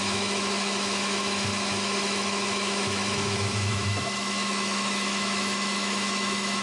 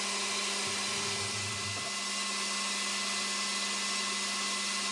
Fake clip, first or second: first